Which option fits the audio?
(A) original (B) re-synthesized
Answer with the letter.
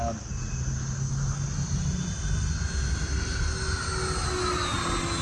A